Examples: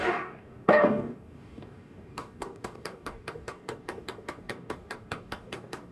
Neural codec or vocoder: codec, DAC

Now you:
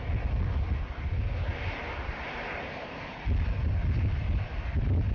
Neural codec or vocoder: none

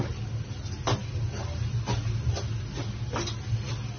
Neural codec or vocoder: none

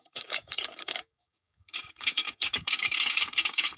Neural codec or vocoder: codec, DAC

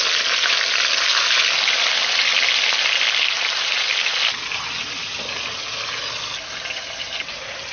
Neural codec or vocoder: none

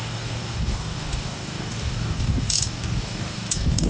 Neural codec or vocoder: codec, DAC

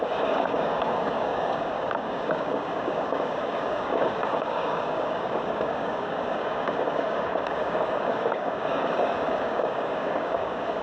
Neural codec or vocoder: codec, DAC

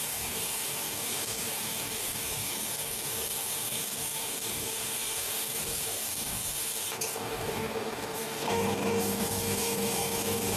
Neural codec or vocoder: codec, DAC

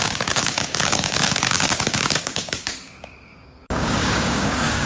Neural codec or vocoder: codec, DAC